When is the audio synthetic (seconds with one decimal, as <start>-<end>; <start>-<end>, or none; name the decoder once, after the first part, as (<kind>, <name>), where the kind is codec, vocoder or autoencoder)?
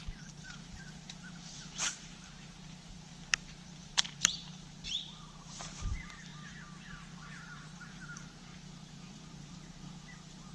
0.0-3.1 (vocoder, BigVGAN v2); 3.8-6.3; 6.9-10.5